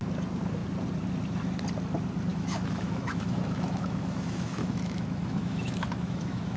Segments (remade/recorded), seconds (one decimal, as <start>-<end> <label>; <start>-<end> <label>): 0.0-2.3 recorded; 2.3-6.6 remade